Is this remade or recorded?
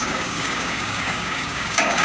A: remade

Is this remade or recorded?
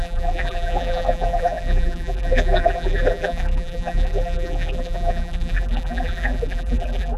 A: remade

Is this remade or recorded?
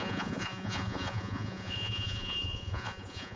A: remade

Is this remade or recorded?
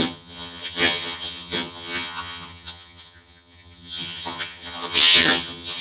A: remade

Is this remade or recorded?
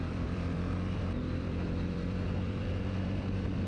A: remade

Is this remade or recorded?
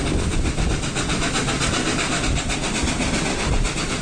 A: recorded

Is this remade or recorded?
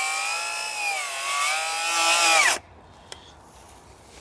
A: recorded